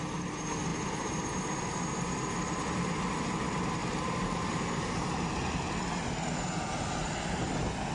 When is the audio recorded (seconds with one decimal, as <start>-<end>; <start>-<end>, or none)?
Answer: 0.0-3.8; 5.0-7.9